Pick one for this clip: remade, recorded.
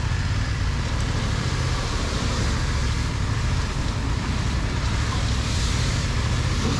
remade